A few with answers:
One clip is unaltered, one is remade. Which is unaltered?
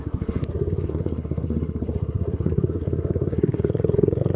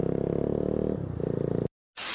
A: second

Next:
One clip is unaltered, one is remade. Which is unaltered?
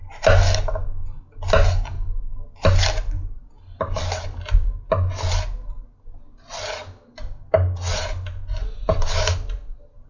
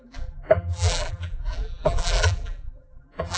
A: first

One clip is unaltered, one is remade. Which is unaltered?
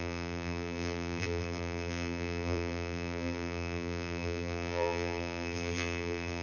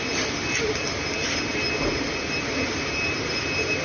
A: second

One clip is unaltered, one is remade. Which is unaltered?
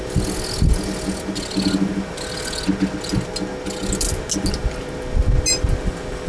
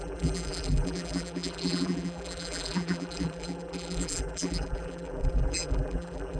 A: first